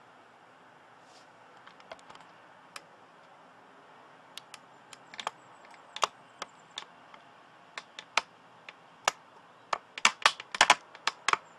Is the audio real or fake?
real